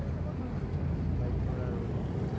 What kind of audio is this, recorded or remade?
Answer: recorded